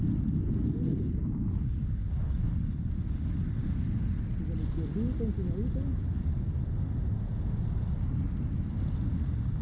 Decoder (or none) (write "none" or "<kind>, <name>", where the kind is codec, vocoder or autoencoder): none